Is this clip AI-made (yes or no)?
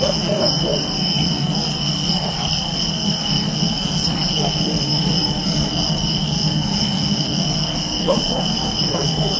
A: yes